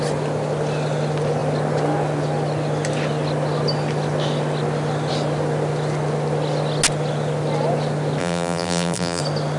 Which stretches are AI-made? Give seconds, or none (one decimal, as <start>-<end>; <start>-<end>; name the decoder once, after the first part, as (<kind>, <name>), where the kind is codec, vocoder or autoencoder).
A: 8.2-9.2 (vocoder, BigVGAN v2)